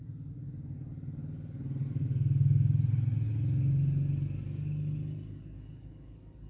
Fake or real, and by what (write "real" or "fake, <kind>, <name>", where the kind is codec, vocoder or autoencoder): real